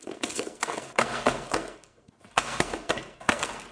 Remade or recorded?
remade